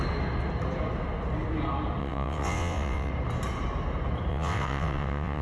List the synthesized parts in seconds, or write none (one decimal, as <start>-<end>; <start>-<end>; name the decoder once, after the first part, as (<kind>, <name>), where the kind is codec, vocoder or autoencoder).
2.0-3.1 (vocoder, WaveNeXt); 4.3-5.4